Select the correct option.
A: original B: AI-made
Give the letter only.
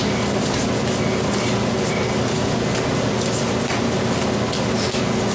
A